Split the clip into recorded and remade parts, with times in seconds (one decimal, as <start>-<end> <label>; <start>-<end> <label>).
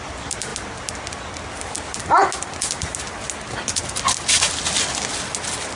0.0-5.8 recorded